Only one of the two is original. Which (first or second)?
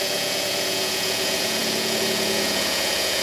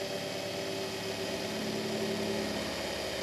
second